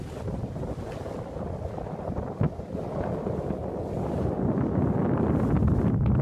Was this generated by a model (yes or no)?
no